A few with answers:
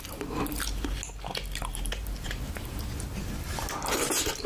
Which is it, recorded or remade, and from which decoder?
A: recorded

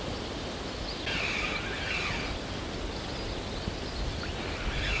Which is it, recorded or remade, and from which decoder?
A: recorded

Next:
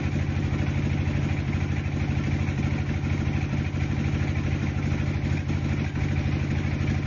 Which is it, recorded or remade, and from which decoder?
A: recorded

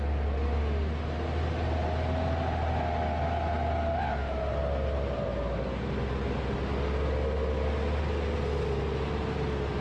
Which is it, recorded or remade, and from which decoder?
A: recorded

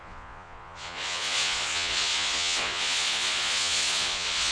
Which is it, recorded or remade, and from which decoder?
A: remade, vocoder, Vocos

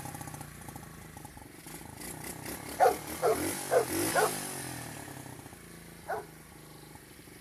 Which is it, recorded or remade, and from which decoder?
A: recorded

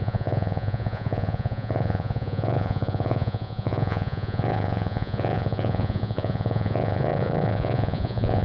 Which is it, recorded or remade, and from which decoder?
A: remade, vocoder, Vocos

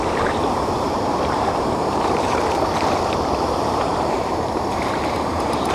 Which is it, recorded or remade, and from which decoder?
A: remade, vocoder, BigVGAN v2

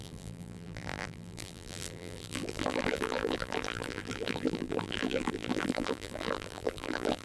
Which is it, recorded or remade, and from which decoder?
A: remade, vocoder, BigVGAN v2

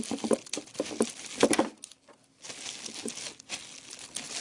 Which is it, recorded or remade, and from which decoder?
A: recorded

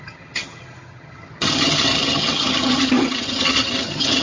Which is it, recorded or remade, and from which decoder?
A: remade, vocoder, HiFi-GAN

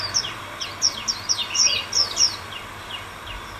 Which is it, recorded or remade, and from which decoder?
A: recorded